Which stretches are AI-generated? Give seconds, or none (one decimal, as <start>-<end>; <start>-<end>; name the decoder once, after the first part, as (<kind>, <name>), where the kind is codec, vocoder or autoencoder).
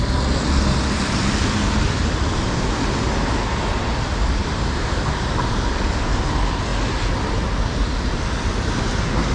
4.4-5.7 (vocoder, BigVGAN v2)